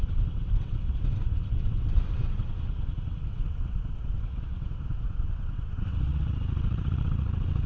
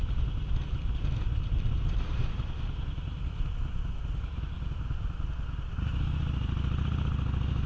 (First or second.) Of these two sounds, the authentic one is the second